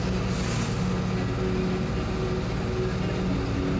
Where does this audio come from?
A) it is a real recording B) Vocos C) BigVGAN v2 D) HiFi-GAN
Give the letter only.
A